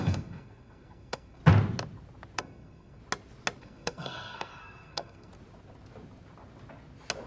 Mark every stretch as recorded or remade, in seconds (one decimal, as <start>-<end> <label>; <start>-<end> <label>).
0.0-1.4 remade; 1.4-2.4 recorded; 2.4-3.0 remade; 3.0-3.6 recorded; 3.6-5.3 remade; 5.3-7.3 recorded